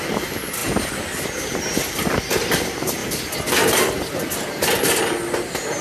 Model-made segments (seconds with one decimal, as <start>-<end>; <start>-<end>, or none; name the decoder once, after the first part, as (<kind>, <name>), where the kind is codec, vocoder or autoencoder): none